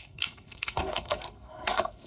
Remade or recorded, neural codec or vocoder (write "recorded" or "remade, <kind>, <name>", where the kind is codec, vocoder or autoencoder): remade, codec, SNAC